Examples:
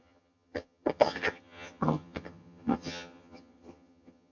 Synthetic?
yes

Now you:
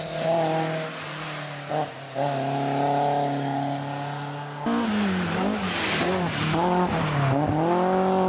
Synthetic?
no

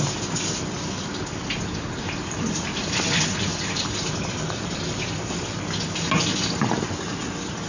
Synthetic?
no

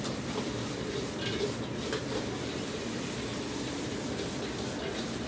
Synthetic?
no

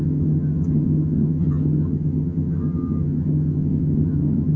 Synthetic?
yes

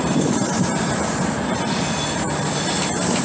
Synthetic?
no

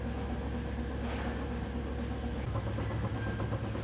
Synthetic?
no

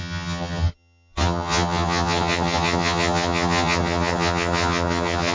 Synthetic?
yes